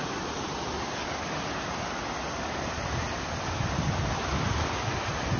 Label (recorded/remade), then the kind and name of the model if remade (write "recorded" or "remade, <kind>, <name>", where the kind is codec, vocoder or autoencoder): recorded